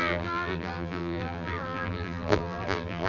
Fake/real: fake